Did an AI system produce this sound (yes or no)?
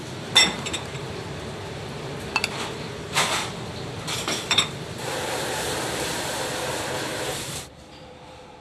yes